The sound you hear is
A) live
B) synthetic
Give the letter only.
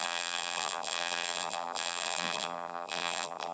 B